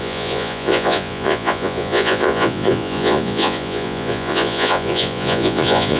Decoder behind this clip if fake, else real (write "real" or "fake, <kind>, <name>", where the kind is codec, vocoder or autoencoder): fake, vocoder, Vocos